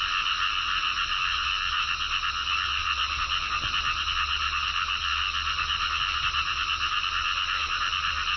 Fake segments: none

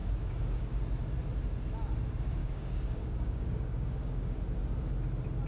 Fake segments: 0.0-0.8; 2.4-4.4

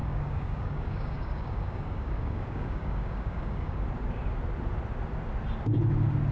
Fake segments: 0.0-3.8

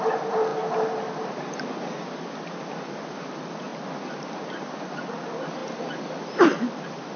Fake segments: none

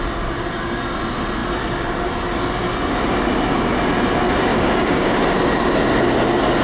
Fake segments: 4.5-5.2

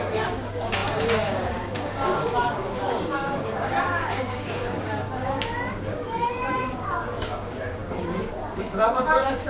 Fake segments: 0.0-9.5

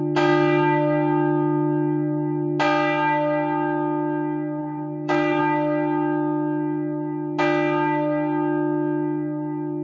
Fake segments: 4.6-5.4